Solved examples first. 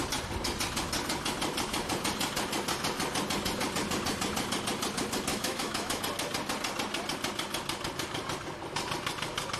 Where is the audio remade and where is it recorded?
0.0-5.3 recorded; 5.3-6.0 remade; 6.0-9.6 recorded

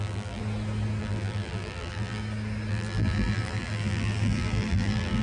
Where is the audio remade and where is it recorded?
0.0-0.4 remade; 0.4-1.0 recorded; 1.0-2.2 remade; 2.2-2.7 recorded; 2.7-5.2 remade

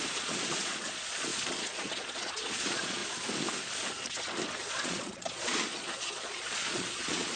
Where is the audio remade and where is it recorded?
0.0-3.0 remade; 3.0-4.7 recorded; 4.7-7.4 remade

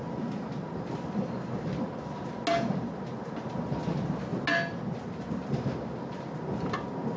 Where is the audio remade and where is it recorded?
0.0-7.2 recorded